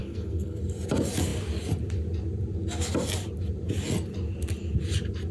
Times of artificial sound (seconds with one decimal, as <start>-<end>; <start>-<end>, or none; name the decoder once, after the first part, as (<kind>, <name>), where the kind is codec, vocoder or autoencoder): 0.0-0.6 (codec, SNAC)